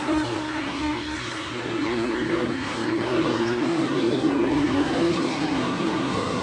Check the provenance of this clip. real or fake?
fake